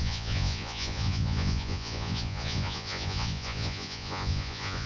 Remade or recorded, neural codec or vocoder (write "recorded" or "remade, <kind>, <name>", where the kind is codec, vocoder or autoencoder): remade, vocoder, Vocos